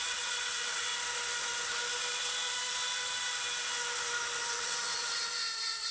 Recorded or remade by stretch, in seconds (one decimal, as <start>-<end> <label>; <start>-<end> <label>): 0.0-0.9 remade; 0.9-4.4 recorded; 4.4-5.9 remade